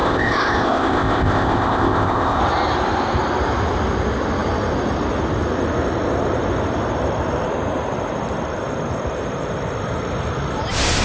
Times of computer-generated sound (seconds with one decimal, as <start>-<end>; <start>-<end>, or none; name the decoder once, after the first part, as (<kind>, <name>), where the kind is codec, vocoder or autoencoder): 0.0-2.4 (codec, ZipCodec)